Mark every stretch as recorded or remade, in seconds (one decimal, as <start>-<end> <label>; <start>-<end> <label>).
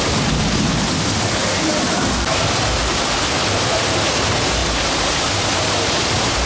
0.0-6.5 recorded